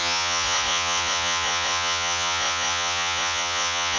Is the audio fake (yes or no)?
yes